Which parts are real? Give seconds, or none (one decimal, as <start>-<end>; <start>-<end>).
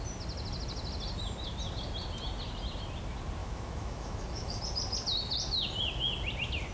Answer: 0.0-3.4; 4.6-6.7